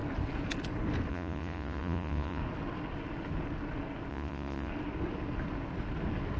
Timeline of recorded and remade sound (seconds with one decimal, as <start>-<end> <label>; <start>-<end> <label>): 0.0-1.1 recorded; 1.1-2.4 remade; 2.4-4.1 recorded; 4.1-4.7 remade; 4.7-6.4 recorded